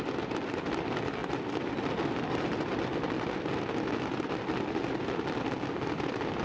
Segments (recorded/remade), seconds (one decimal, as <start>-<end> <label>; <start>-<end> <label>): 0.0-6.4 recorded